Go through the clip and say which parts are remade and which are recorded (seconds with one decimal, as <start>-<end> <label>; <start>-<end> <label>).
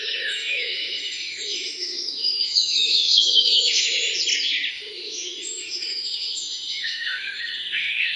0.0-4.1 remade; 4.1-4.7 recorded; 4.7-8.2 remade